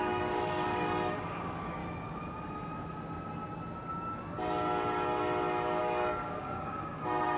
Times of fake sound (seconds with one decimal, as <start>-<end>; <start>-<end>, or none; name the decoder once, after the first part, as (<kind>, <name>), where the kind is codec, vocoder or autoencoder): 0.0-1.8 (codec, DAC); 5.8-7.4